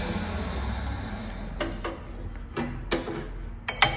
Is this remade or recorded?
recorded